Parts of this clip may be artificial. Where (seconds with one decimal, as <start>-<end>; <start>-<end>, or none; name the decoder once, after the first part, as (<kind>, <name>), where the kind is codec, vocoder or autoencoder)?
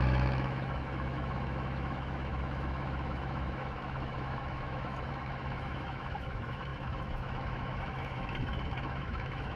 0.0-9.6 (autoencoder, DAC-VAE)